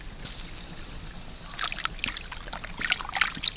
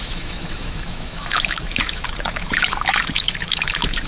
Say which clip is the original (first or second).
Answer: first